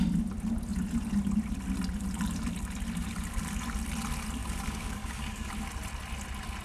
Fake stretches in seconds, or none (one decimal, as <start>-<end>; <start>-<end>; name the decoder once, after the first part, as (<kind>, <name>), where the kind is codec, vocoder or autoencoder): 4.4-5.5 (codec, DAC)